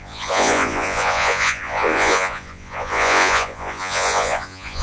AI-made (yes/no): yes